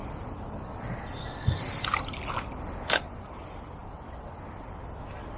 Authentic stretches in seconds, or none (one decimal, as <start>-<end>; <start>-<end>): 0.0-5.4

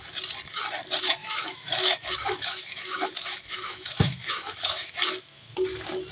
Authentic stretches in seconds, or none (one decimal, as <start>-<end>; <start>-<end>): 0.0-1.2; 4.9-6.1

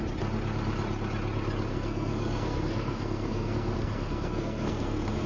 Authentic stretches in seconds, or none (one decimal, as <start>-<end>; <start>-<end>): 0.0-1.7

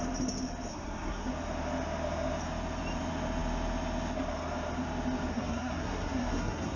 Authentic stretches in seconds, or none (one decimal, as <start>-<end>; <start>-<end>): 0.0-0.7; 1.3-5.3

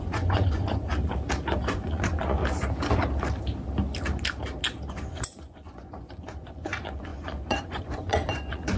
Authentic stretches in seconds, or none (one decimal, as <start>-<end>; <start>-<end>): 0.9-1.7; 2.4-4.9

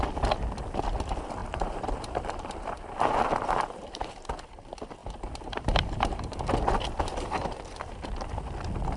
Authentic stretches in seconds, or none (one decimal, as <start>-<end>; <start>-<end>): 0.0-1.4; 4.3-5.0; 6.7-9.0

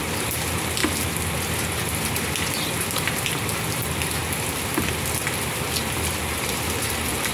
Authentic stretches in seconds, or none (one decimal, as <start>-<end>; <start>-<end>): 0.0-7.3